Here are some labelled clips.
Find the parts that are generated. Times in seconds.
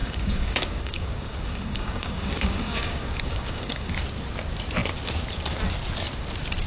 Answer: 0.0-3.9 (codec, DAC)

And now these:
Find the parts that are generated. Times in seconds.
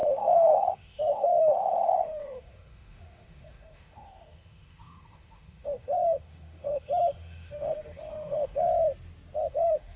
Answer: 0.0-8.7 (autoencoder, DAC-VAE); 9.5-10.0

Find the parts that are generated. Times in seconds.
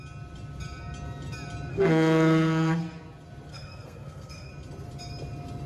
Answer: 1.7-2.8 (codec, SNAC); 3.5-4.5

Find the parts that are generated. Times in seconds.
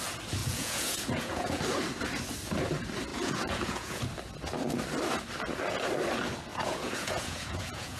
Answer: 0.4-1.6 (vocoder, Vocos); 3.1-4.0; 6.5-8.0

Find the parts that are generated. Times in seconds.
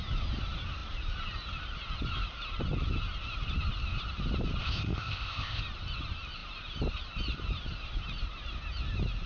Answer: 4.6-5.6 (codec, ZipCodec)